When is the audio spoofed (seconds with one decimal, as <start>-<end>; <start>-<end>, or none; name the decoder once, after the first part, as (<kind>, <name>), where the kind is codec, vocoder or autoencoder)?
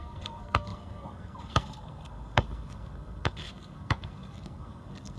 0.0-5.2 (codec, SNAC)